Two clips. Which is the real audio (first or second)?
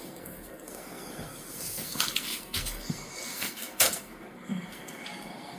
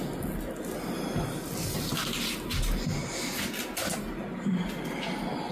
second